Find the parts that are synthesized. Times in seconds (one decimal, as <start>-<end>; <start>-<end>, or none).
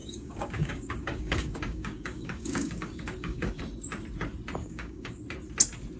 0.0-3.6; 4.6-5.2